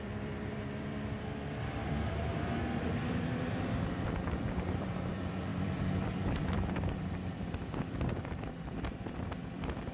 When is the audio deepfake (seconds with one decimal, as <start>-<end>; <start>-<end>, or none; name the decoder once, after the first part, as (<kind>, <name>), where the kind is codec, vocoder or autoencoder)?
0.0-9.9 (vocoder, BigVGAN v2)